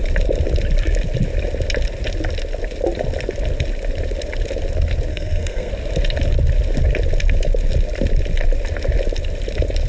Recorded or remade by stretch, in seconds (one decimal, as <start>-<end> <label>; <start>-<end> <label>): 0.0-5.1 recorded; 5.1-5.7 remade; 5.7-9.9 recorded